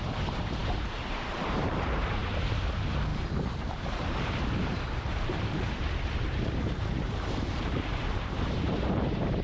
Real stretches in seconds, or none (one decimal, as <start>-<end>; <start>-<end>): none